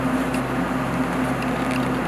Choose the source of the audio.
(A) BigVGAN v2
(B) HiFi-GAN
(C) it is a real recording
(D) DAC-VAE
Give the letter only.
C